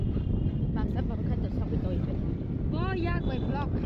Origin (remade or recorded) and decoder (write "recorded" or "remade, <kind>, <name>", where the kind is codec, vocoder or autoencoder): recorded